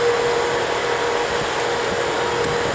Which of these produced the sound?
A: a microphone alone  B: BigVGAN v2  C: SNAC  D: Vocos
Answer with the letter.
A